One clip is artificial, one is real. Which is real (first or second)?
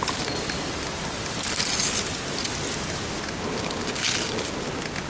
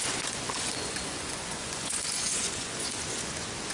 first